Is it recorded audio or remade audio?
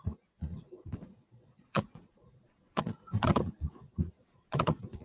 remade